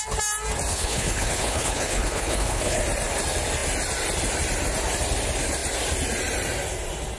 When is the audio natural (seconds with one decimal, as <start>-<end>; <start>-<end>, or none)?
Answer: 0.0-0.7; 2.8-7.2